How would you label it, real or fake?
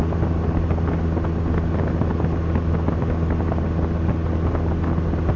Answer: real